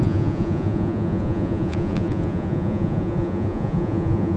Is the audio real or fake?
fake